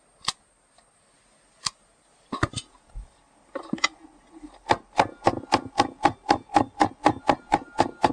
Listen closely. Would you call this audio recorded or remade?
recorded